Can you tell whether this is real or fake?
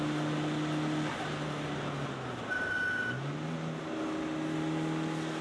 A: real